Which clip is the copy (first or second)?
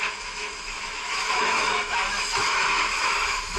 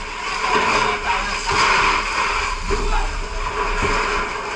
first